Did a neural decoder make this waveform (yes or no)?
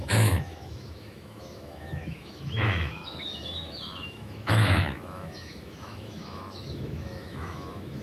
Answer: yes